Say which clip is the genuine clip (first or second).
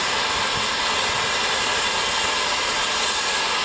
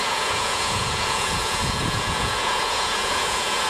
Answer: first